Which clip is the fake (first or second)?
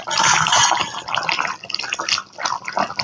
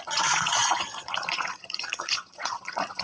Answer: second